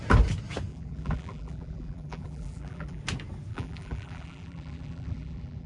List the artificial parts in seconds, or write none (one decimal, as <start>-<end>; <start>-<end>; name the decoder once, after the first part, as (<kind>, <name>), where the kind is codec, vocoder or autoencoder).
0.7-3.0 (vocoder, BigVGAN v2); 3.5-5.7